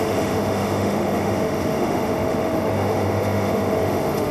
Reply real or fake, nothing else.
fake